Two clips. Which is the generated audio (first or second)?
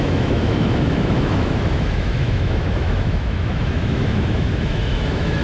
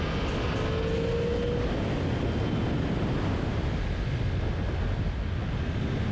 first